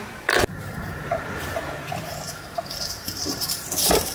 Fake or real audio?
fake